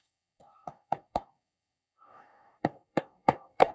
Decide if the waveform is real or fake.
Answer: fake